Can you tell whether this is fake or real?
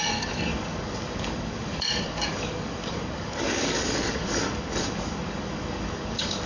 fake